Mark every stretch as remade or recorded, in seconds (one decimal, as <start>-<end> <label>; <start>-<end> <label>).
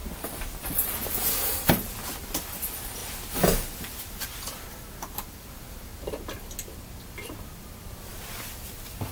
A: 0.0-3.0 remade; 3.0-4.0 recorded; 4.0-5.9 remade; 5.9-7.1 recorded; 7.1-8.1 remade; 8.1-8.7 recorded; 8.7-9.1 remade